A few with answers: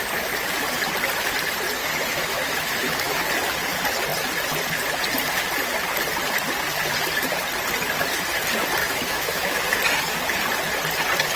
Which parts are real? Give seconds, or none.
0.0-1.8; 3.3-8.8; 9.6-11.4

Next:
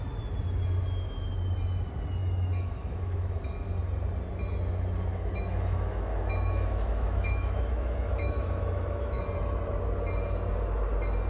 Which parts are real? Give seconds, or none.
0.0-2.2; 3.4-5.1; 9.2-11.3

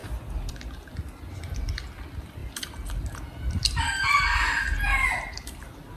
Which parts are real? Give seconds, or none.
0.0-6.0

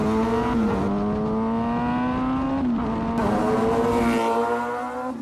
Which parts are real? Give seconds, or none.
0.0-5.2

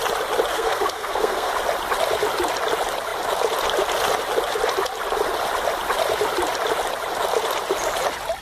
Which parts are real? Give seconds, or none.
0.0-0.5; 1.5-8.4